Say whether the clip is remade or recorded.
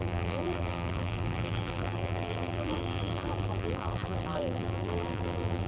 remade